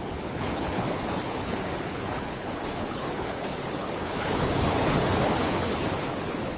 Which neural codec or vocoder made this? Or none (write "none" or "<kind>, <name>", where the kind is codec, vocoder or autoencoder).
codec, HILCodec